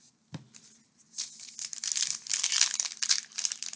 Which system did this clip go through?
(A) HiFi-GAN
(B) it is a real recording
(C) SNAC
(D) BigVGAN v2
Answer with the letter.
B